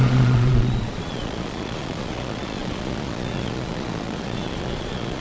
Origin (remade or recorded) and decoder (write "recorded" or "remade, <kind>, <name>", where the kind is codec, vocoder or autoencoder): remade, vocoder, Vocos